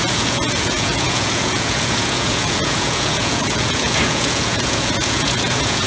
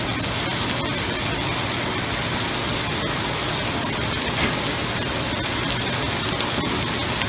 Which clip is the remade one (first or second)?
first